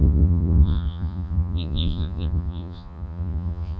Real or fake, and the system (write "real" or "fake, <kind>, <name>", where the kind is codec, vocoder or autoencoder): fake, vocoder, Vocos